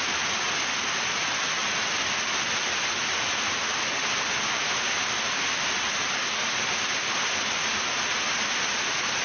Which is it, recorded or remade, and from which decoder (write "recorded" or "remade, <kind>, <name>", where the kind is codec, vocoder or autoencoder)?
recorded